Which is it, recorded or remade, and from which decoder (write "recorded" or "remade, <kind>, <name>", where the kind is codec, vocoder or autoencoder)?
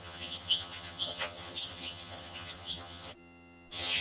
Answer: remade, vocoder, HiFi-GAN